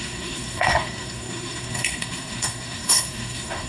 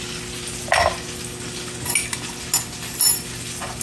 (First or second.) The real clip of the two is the second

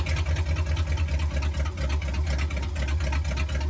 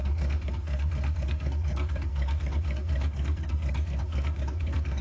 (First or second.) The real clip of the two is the first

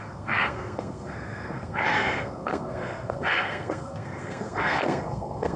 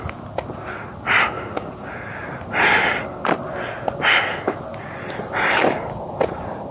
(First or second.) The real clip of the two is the second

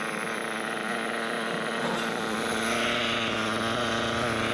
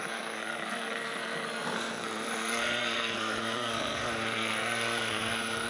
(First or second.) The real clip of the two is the first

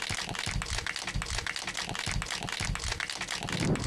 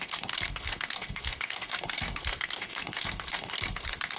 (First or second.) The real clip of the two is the first